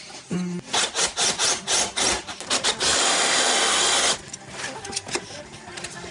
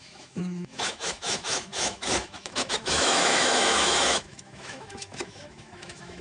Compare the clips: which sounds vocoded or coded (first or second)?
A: second